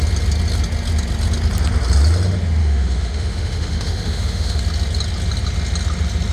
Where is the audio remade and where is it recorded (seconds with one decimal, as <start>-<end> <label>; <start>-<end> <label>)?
0.0-2.6 recorded; 2.6-4.6 remade; 4.6-6.3 recorded